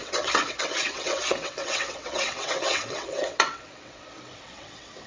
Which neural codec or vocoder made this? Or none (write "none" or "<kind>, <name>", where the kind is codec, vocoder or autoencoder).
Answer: vocoder, WaveNeXt